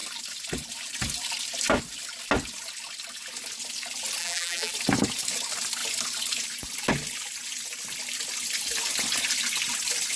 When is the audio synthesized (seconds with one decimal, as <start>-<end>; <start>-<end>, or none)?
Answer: 4.2-4.7